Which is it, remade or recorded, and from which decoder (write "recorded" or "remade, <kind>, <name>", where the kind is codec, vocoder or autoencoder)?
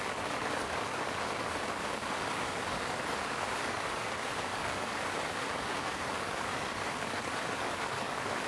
remade, codec, DAC